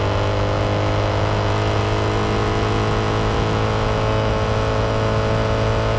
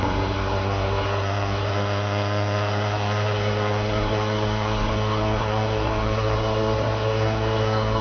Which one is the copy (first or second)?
second